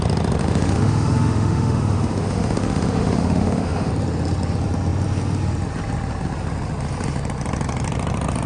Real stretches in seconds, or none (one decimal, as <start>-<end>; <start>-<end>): 0.0-0.4; 3.9-8.5

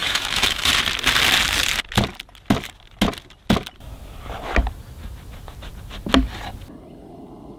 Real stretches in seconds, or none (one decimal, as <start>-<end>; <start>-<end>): 0.7-7.6

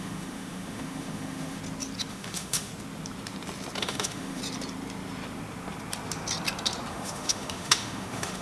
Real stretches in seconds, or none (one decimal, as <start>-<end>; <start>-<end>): 1.6-2.1; 2.7-3.8; 4.4-6.9

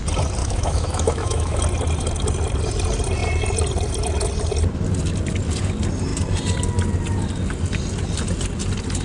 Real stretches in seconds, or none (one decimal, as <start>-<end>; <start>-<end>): 0.0-0.4; 1.6-9.0